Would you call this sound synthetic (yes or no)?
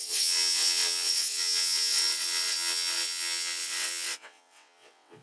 yes